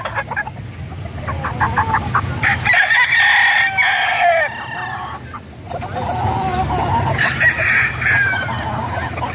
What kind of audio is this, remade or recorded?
recorded